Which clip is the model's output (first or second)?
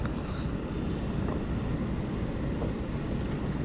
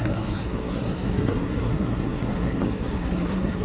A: second